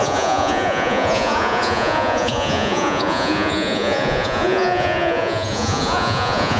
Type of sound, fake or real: fake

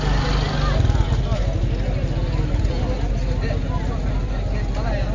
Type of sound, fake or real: real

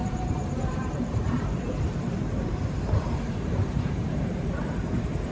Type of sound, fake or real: fake